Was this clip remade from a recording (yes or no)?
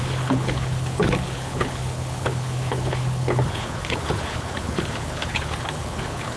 yes